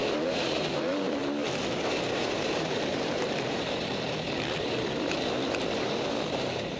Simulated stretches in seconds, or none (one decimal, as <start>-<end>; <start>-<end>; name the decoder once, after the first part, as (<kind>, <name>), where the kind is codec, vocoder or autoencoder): 0.0-1.2 (vocoder, BigVGAN v2); 1.9-6.8